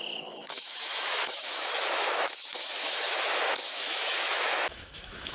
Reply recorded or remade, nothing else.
remade